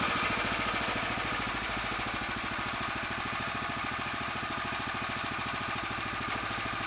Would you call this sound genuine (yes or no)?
yes